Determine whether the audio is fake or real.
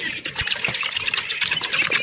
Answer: real